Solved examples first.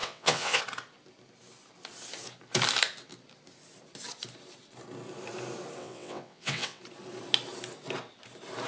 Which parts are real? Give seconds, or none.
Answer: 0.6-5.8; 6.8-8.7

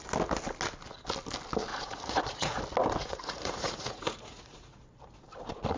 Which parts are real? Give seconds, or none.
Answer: 0.0-1.7; 2.6-3.0; 4.8-5.8

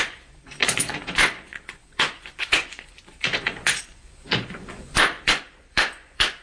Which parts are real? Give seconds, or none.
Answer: none